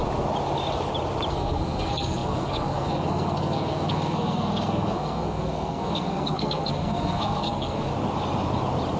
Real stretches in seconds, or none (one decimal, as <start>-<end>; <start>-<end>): 0.0-1.3; 7.9-9.0